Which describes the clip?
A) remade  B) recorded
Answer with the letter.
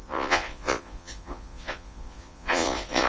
A